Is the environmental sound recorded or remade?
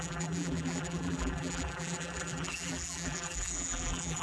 remade